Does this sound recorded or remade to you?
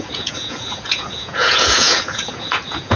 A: remade